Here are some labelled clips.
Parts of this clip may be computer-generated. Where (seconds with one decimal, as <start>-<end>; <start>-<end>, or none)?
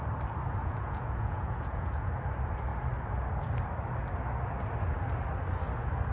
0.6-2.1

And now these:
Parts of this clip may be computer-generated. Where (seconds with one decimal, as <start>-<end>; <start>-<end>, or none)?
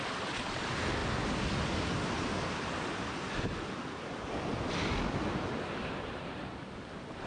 none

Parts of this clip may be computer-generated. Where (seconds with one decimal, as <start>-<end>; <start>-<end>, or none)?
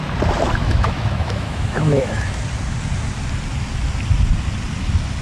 0.6-2.4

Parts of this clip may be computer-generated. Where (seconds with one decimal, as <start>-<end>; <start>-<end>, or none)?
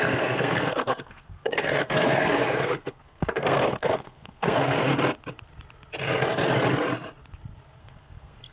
0.0-4.9; 7.8-8.5